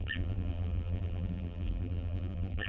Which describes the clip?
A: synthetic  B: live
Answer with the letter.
A